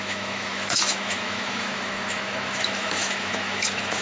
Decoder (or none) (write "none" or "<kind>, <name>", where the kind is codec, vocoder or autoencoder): autoencoder, DAC-VAE